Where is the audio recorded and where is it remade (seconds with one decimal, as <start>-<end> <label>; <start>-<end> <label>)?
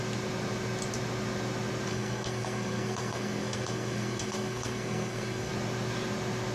0.0-1.9 recorded; 1.9-5.5 remade; 5.5-6.5 recorded